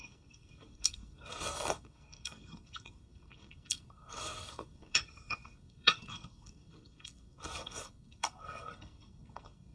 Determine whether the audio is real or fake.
fake